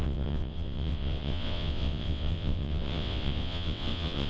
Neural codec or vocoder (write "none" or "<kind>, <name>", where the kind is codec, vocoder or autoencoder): vocoder, WaveNeXt